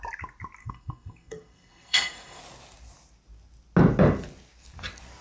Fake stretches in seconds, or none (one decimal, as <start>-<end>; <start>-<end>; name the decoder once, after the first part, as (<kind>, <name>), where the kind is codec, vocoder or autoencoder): 0.6-2.4 (codec, SNAC)